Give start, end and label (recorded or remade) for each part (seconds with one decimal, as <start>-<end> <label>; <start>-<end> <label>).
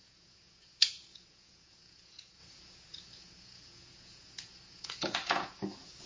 0.0-6.1 remade